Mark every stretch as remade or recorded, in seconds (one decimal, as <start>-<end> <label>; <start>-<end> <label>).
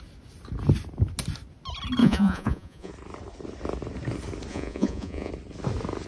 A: 0.0-2.0 recorded; 2.0-2.9 remade; 2.9-4.5 recorded; 4.5-5.3 remade; 5.3-6.1 recorded